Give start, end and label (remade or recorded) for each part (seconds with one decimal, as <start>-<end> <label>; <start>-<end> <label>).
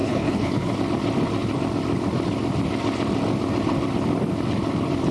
0.0-0.8 remade; 0.8-5.1 recorded